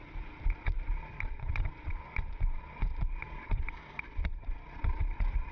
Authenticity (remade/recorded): remade